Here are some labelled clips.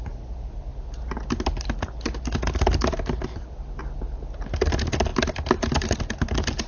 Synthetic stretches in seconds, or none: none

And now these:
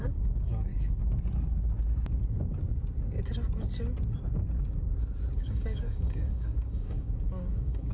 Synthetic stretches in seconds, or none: 0.0-0.7 (codec, DAC); 5.4-7.9

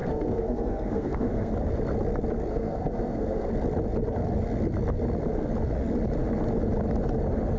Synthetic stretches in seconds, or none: 0.0-1.5 (codec, SNAC); 2.5-3.5

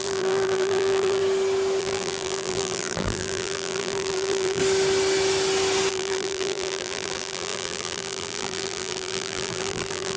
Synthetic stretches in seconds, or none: 0.0-1.2 (vocoder, BigVGAN v2); 1.8-4.6; 5.9-10.2